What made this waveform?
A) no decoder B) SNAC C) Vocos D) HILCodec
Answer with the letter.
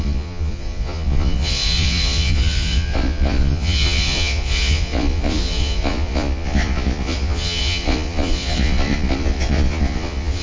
C